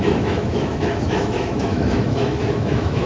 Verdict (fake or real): fake